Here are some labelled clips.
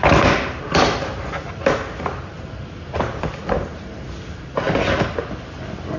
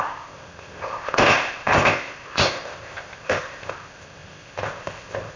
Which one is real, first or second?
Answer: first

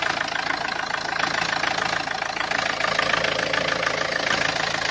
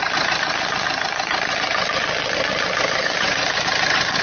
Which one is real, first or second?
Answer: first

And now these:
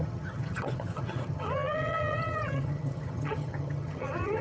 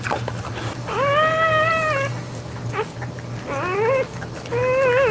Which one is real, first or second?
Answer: second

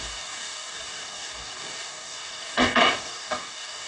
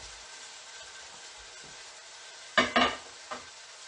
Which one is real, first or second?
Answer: second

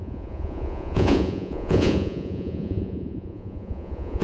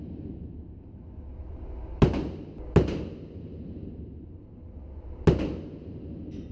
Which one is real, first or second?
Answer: second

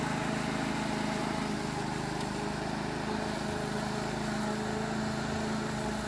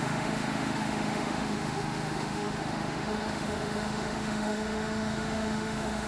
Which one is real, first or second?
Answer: first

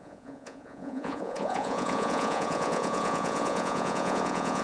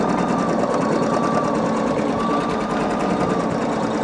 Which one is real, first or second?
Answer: second